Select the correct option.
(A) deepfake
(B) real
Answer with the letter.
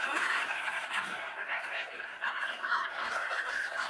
A